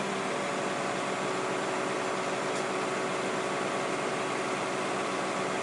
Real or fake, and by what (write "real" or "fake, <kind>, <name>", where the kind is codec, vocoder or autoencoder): real